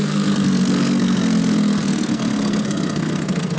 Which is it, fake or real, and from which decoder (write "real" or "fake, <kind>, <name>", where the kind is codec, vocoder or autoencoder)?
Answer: fake, codec, SNAC